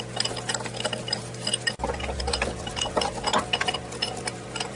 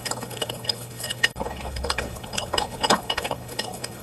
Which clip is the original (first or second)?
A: first